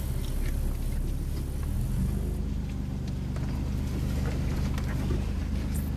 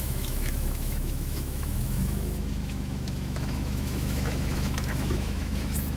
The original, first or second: first